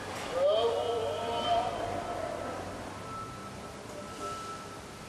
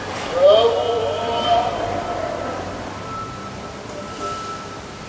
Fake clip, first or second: second